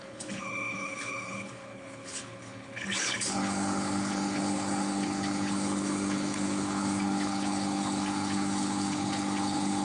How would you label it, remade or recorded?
remade